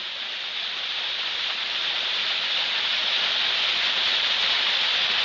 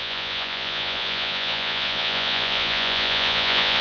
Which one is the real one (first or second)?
first